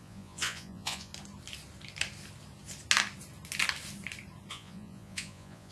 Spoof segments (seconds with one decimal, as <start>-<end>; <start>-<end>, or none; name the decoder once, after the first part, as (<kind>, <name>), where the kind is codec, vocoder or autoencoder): 0.0-1.1 (vocoder, Vocos); 4.5-5.7